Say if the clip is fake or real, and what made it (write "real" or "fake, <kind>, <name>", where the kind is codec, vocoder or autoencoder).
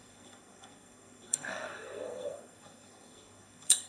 fake, codec, SNAC